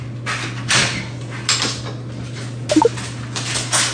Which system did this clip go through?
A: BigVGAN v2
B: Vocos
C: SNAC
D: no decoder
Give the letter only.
D